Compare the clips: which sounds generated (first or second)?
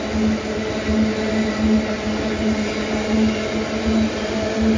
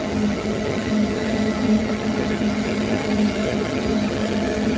second